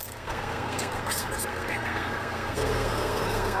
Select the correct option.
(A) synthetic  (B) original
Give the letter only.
A